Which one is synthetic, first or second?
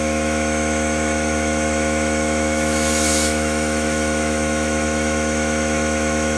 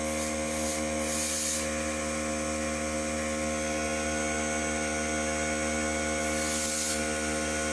first